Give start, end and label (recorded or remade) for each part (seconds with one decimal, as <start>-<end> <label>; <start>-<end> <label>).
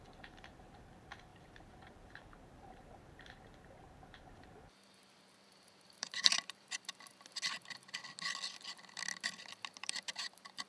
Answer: 0.0-7.1 remade; 7.1-9.8 recorded; 9.8-10.7 remade